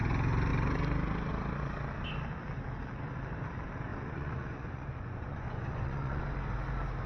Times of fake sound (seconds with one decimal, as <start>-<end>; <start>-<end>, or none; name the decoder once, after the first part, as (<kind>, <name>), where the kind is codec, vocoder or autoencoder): 3.9-6.2 (vocoder, Vocos)